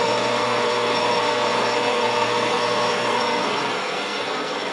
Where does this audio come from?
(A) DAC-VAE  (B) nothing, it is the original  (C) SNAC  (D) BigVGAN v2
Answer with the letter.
C